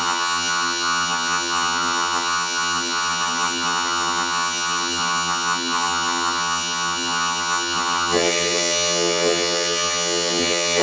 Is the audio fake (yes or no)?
yes